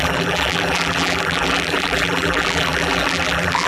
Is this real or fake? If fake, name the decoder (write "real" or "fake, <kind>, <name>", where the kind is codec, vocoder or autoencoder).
fake, vocoder, BigVGAN v2